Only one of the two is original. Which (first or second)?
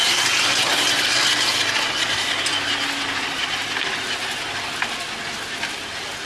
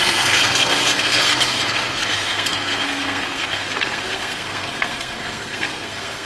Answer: first